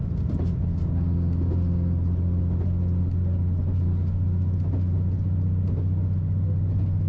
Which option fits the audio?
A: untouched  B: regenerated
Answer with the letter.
A